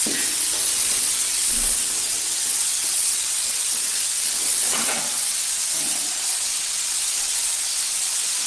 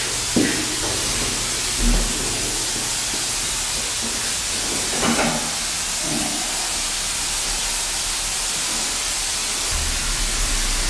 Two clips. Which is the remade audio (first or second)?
first